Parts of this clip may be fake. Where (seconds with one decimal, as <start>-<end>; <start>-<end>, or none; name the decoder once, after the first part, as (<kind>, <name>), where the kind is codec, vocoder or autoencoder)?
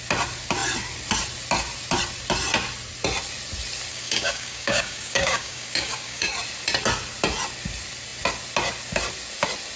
3.9-6.3 (codec, DAC)